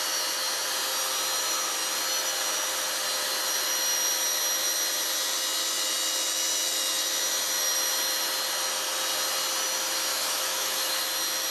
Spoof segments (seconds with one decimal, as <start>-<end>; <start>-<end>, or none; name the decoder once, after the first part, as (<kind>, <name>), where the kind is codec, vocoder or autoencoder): 10.1-11.0 (autoencoder, DAC-VAE)